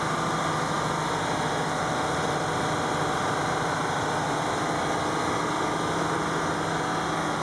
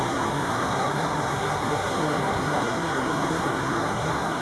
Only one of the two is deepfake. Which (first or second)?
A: second